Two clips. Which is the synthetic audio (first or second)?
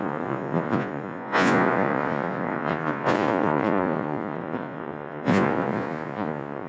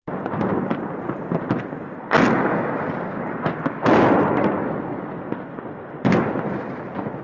first